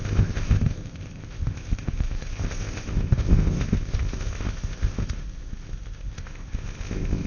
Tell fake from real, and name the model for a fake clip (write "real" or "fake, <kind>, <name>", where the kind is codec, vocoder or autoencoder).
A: fake, codec, ZipCodec